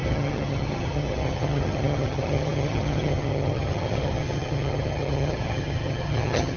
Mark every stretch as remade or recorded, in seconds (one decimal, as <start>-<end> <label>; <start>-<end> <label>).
0.0-6.6 remade